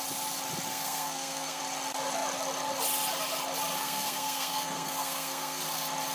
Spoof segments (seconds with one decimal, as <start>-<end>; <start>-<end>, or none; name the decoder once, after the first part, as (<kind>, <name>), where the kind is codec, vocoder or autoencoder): 0.7-1.6 (codec, SNAC); 3.8-5.6